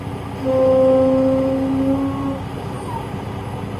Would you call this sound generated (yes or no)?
no